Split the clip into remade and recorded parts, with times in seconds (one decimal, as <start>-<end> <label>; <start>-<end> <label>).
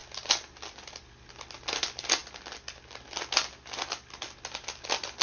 0.0-5.2 recorded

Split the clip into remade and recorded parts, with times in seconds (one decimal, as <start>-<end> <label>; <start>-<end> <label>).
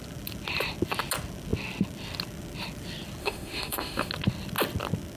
0.0-3.2 recorded; 3.2-4.1 remade; 4.1-5.2 recorded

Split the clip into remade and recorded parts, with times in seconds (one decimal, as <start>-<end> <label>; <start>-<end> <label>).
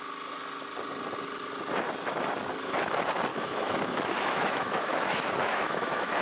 0.0-3.3 recorded; 3.3-6.2 remade